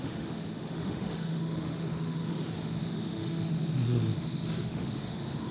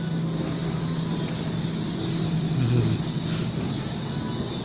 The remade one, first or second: first